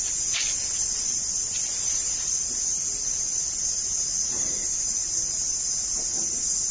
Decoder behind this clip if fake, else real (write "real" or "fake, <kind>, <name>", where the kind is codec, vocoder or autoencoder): real